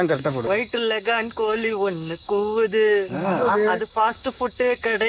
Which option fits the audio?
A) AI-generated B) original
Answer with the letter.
A